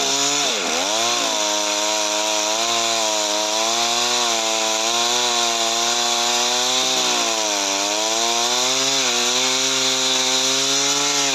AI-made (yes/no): no